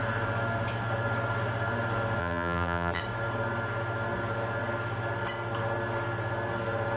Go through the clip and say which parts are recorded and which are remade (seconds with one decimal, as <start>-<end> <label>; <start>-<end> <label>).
0.0-2.2 recorded; 2.2-3.0 remade; 3.0-7.0 recorded